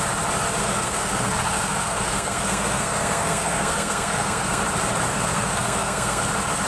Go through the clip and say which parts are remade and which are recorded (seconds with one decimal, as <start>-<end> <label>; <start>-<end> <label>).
0.0-0.6 recorded; 0.6-4.6 remade; 4.6-5.1 recorded; 5.1-6.2 remade; 6.2-6.7 recorded